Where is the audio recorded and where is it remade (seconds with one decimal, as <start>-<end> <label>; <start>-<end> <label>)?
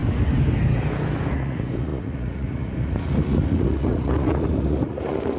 0.0-1.3 recorded; 1.3-5.4 remade